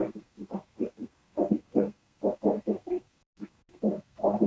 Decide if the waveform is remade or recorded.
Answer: remade